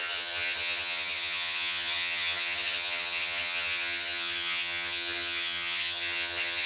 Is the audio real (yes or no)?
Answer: no